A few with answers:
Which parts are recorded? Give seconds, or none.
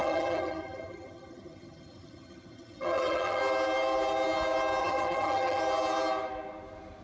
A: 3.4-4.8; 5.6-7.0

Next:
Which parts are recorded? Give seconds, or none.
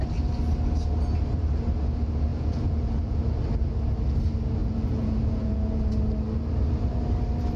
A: 0.0-2.3; 3.2-4.6; 5.9-7.6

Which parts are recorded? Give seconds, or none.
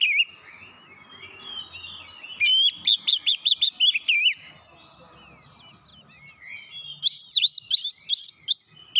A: 0.0-9.0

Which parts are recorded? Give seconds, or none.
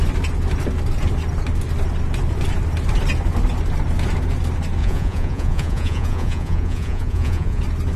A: 0.0-4.8; 7.6-8.0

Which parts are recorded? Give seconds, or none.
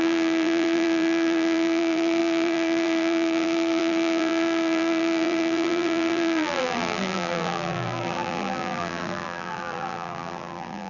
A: none